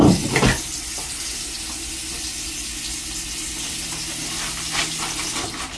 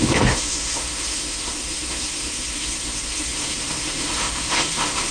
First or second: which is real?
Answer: first